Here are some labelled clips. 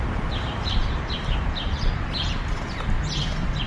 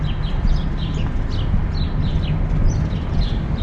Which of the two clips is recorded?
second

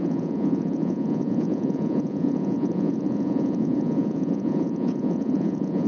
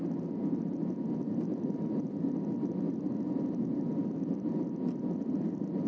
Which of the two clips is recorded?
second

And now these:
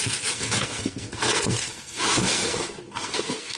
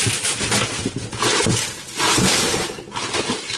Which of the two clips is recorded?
second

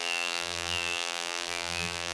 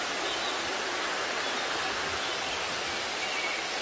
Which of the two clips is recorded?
second